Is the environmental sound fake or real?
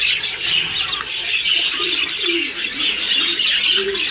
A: real